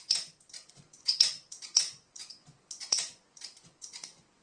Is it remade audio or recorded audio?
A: remade